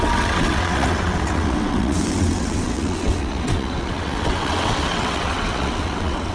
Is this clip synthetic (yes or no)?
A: yes